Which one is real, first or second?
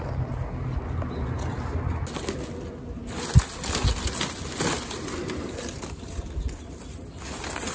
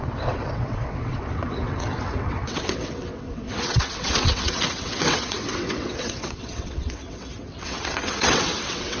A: first